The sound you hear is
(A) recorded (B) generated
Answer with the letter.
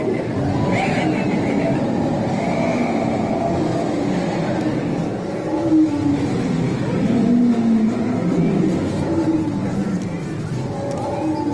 A